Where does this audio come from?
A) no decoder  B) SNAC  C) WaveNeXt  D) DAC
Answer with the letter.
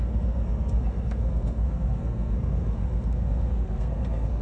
B